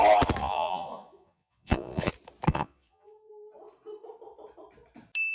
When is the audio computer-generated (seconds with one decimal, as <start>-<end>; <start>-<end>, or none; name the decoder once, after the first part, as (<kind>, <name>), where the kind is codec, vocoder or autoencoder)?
0.4-2.1 (vocoder, Vocos); 2.5-3.3